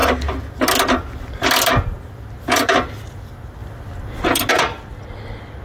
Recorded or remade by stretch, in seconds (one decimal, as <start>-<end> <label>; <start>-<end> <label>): 0.0-5.6 recorded